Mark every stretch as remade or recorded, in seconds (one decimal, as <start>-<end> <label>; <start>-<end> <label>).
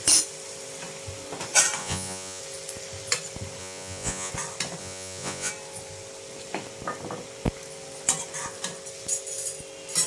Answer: 0.0-1.8 recorded; 1.8-2.4 remade; 2.4-3.6 recorded; 3.6-4.3 remade; 4.3-4.8 recorded; 4.8-5.5 remade; 5.5-10.1 recorded